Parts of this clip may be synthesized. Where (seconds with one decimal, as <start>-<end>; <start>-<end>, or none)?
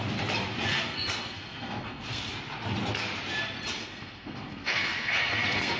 0.7-2.3; 3.8-5.8